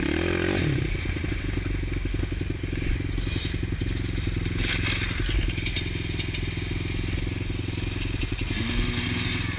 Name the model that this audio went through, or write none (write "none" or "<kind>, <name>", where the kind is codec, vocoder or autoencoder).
none